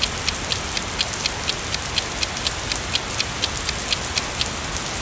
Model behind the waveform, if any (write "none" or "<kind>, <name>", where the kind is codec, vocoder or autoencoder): none